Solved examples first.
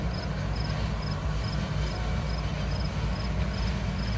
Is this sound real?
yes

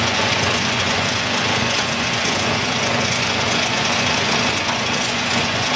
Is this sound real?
no